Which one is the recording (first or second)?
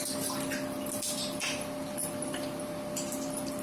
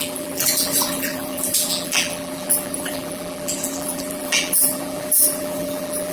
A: first